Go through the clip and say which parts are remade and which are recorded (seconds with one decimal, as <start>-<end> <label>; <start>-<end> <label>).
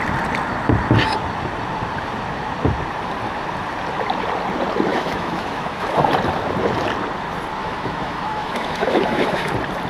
0.0-4.9 recorded; 4.9-6.1 remade; 6.1-7.6 recorded; 7.6-9.5 remade; 9.5-9.9 recorded